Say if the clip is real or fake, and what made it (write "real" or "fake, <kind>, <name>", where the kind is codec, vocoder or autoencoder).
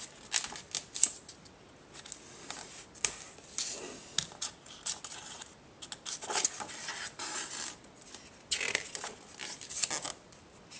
real